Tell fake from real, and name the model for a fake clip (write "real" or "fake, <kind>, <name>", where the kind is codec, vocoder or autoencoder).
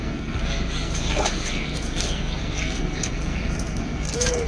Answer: fake, codec, SNAC